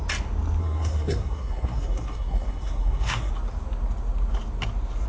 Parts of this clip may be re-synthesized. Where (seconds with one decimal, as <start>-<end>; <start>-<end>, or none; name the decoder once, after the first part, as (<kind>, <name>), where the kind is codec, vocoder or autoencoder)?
0.6-3.3 (codec, SNAC)